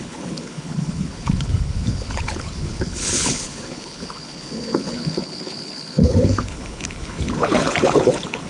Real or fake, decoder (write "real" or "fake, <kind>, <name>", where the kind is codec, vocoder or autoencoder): fake, codec, HILCodec